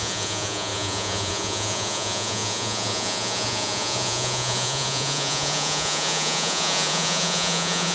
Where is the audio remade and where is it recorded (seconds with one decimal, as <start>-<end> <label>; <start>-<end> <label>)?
0.0-7.9 remade